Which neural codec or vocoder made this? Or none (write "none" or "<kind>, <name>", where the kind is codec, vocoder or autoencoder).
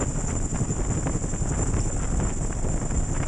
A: none